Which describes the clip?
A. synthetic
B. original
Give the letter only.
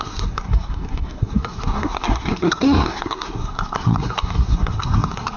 A